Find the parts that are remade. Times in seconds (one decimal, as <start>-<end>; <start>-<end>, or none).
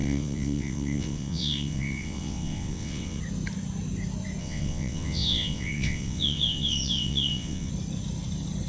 0.0-3.2; 4.4-7.7